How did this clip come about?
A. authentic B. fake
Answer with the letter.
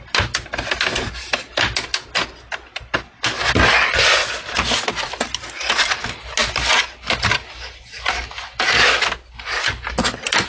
A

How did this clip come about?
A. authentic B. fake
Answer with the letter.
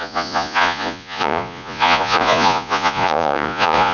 B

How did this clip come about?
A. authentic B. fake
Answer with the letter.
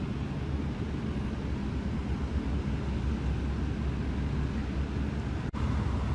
A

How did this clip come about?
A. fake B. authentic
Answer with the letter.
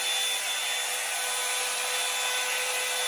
B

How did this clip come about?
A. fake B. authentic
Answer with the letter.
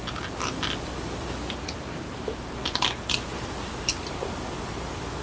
B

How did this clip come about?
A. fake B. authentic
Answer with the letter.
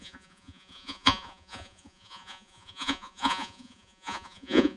A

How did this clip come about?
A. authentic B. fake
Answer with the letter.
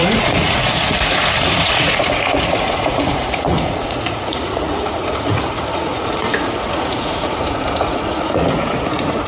B